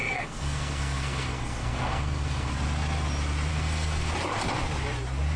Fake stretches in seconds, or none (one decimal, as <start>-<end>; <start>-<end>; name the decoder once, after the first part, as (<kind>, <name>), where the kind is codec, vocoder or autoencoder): 0.0-2.5 (codec, SNAC); 3.5-4.1